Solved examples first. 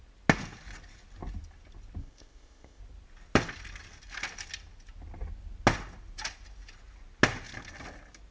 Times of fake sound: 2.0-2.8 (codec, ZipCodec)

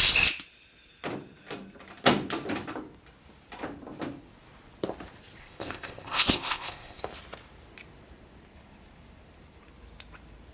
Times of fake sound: 5.4-7.0 (codec, ZipCodec)

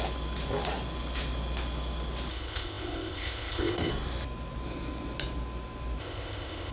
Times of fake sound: 2.3-3.9 (codec, ZipCodec); 6.0-6.7

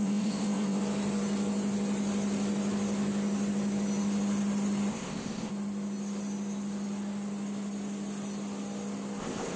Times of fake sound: 0.0-0.8 (codec, ZipCodec); 4.9-5.5; 9.2-9.6

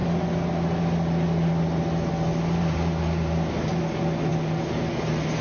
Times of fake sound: none

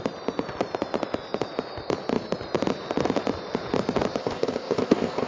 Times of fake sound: 4.2-5.3 (codec, ZipCodec)